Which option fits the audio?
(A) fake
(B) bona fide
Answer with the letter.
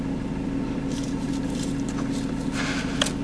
B